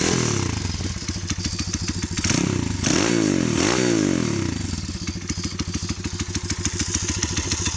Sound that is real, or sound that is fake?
real